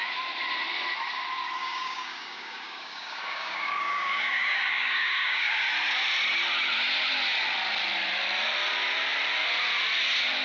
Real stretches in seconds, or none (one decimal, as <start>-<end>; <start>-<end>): 0.0-1.6; 5.6-10.4